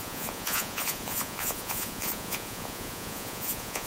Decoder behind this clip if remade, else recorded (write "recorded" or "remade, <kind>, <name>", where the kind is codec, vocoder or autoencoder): remade, vocoder, Vocos